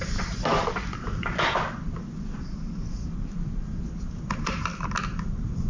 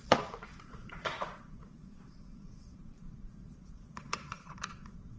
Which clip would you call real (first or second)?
first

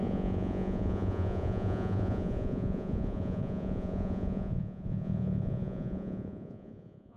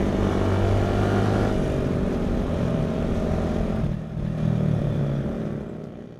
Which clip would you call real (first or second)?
second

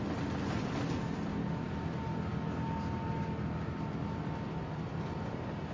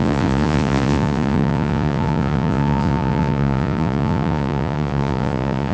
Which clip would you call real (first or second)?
first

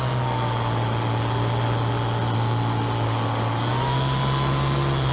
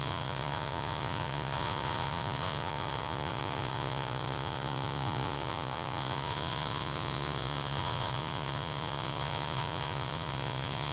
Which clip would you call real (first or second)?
first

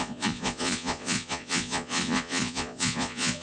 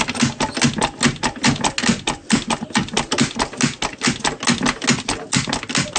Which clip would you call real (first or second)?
second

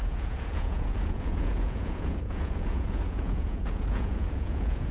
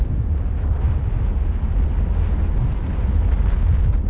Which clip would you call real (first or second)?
second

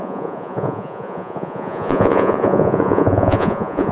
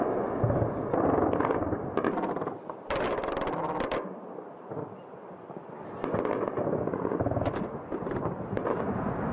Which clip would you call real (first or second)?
second